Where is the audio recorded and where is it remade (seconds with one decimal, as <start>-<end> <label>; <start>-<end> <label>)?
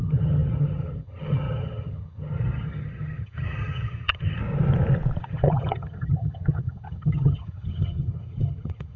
0.0-4.4 remade; 4.4-5.2 recorded; 5.2-9.0 remade